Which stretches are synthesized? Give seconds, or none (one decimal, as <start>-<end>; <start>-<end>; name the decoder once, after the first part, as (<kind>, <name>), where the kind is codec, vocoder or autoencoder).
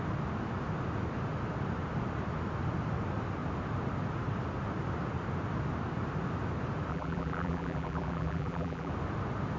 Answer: 6.9-8.9 (vocoder, BigVGAN v2)